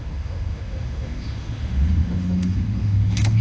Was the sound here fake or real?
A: fake